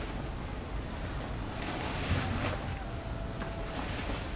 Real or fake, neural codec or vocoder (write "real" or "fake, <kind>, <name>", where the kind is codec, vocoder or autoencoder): real